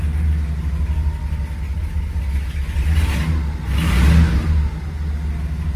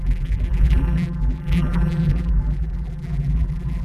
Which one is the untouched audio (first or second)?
first